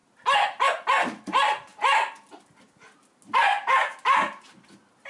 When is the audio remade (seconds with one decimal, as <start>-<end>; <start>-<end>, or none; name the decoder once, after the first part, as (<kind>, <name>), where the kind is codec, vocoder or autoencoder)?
none